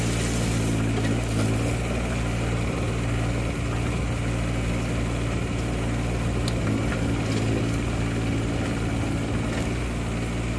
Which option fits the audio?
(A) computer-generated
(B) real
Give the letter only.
B